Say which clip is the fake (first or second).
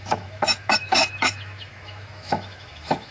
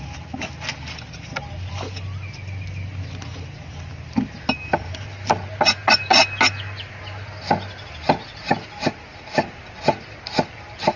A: first